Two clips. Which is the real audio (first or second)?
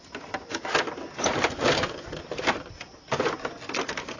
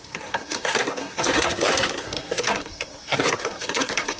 first